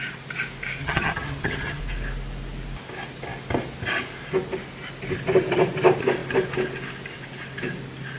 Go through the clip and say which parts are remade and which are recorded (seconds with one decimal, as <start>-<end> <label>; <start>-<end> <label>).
0.0-0.8 recorded; 0.8-1.8 remade; 1.8-8.2 recorded